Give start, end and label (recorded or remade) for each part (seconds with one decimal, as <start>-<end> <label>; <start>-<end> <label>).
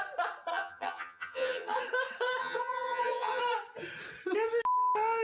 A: 0.0-0.5 recorded; 0.5-1.8 remade; 1.8-2.4 recorded; 2.4-3.4 remade; 3.4-5.2 recorded